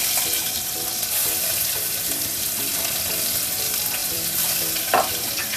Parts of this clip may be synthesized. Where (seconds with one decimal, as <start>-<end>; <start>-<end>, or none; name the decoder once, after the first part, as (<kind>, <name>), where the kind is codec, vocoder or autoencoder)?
0.0-5.6 (vocoder, BigVGAN v2)